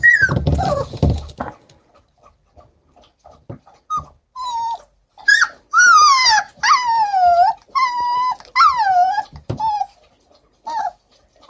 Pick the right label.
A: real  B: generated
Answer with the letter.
A